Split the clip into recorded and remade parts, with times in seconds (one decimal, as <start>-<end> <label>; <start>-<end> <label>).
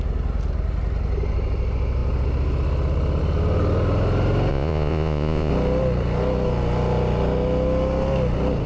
0.0-4.5 recorded; 4.5-5.5 remade; 5.5-8.7 recorded